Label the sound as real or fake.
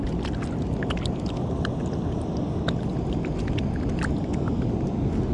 real